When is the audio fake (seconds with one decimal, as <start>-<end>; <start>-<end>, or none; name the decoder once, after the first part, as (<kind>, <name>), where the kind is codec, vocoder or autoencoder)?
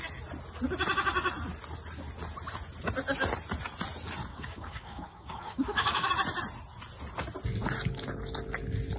4.3-6.1 (codec, DAC)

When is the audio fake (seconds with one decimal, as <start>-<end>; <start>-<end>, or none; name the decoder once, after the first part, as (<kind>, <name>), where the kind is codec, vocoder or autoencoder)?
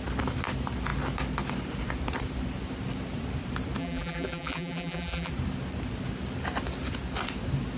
3.8-5.3 (vocoder, BigVGAN v2)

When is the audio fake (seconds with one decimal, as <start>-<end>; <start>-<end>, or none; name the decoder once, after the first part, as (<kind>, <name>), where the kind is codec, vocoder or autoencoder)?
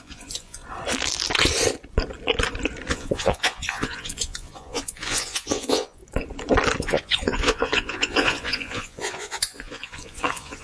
0.0-0.6 (vocoder, Vocos); 2.9-6.0; 6.8-10.6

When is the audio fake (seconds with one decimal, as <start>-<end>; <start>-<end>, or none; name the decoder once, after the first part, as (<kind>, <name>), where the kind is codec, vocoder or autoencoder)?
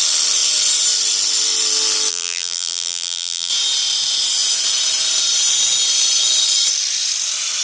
2.1-3.5 (vocoder, BigVGAN v2)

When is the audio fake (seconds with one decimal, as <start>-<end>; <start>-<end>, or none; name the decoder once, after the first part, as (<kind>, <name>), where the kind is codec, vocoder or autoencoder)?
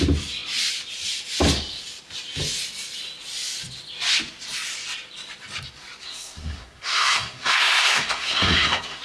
6.0-9.0 (codec, SNAC)